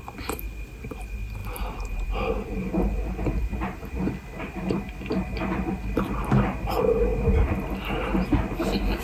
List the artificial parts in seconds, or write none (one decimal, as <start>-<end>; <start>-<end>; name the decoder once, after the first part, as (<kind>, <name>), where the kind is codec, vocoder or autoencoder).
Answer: 1.4-4.1 (vocoder, BigVGAN v2)

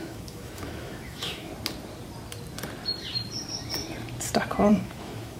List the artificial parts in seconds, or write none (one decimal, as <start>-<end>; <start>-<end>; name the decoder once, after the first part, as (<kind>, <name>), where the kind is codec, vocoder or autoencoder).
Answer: 0.0-1.5 (autoencoder, DAC-VAE); 4.7-5.4

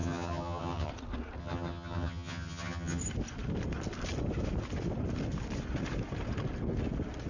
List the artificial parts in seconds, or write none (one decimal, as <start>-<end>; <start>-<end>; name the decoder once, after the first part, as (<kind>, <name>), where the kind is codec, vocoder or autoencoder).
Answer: 0.0-0.9 (vocoder, HiFi-GAN); 1.4-3.0

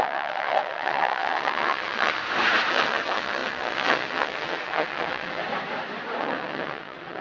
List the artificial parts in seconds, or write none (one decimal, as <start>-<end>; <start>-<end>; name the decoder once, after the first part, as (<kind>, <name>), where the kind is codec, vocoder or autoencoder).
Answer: 0.0-2.2 (vocoder, WaveNeXt); 2.7-5.4; 6.2-7.2

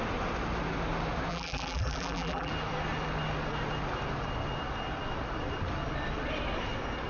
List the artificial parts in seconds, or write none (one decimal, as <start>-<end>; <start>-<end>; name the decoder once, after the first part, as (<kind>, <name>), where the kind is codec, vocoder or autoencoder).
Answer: 1.3-2.5 (vocoder, BigVGAN v2)

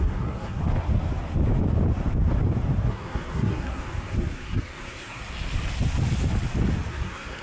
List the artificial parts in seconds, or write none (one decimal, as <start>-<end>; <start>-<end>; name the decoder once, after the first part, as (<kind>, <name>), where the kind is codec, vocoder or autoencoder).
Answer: 0.0-0.6 (codec, SNAC); 2.9-5.2; 6.9-7.4